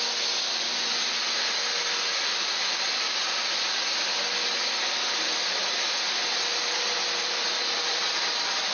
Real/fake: real